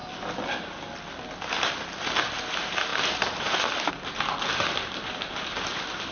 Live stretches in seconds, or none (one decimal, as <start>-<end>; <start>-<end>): 0.0-6.1